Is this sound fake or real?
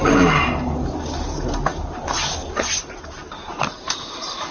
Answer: real